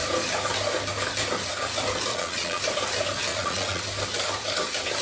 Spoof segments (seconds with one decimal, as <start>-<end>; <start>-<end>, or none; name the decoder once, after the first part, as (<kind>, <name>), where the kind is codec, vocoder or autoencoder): 2.1-2.6 (vocoder, Vocos); 3.3-3.8